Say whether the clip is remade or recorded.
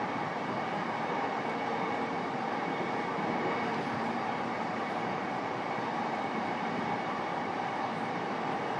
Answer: remade